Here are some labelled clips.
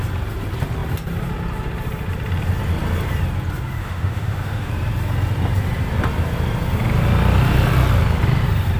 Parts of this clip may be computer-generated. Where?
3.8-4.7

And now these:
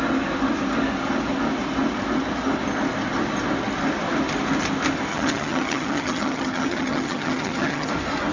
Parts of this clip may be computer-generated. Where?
5.1-7.9

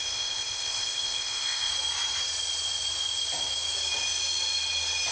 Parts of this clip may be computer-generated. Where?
0.0-1.7

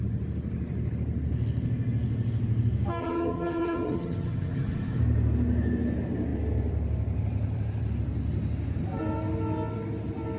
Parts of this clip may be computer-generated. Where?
3.0-5.0

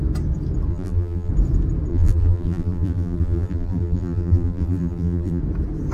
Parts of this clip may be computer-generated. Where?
0.7-1.3; 1.9-5.4

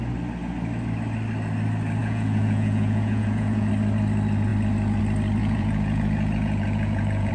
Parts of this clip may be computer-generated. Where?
2.0-3.7; 5.4-7.3